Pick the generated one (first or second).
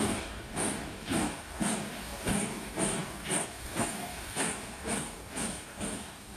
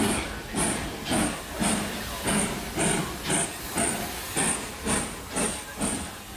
first